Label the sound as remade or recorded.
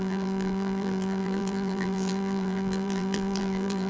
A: remade